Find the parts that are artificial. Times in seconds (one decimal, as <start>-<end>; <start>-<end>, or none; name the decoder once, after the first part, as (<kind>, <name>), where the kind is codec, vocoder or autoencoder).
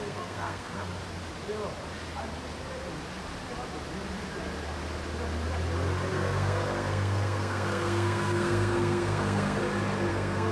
0.0-0.9 (codec, SNAC); 6.1-9.6; 10.1-10.5